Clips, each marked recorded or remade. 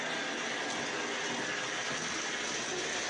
recorded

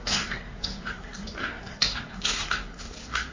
remade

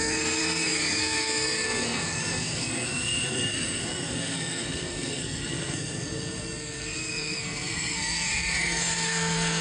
remade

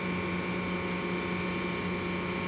recorded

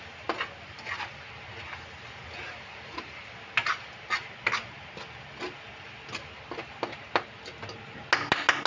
recorded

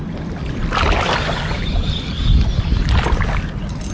recorded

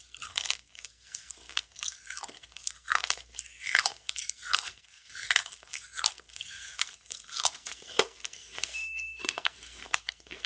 remade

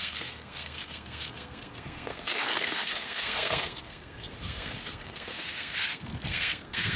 remade